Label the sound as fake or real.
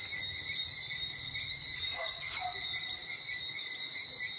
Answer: real